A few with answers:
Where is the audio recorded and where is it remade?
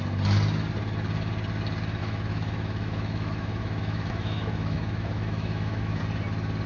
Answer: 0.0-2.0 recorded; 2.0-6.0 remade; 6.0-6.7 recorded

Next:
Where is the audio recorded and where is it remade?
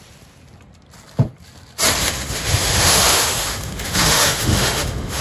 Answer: 0.0-2.0 recorded; 2.0-5.2 remade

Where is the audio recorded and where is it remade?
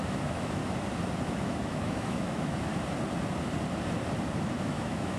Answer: 0.0-0.6 remade; 0.6-1.2 recorded; 1.2-2.7 remade; 2.7-4.4 recorded; 4.4-5.2 remade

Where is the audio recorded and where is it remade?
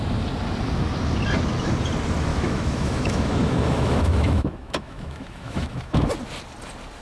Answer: 0.0-2.3 recorded; 2.3-6.1 remade; 6.1-7.0 recorded